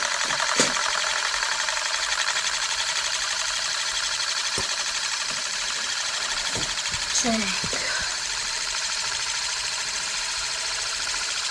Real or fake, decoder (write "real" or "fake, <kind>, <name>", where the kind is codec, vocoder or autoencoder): fake, vocoder, BigVGAN v2